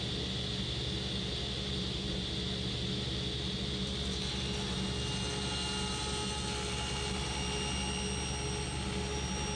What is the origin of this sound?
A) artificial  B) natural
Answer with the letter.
B